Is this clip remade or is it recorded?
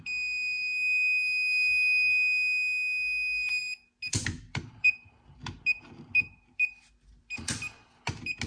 recorded